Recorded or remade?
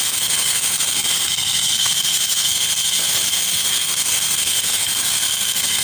remade